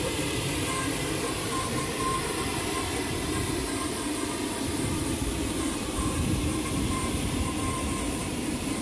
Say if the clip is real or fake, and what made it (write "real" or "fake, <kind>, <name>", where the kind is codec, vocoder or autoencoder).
fake, vocoder, BigVGAN v2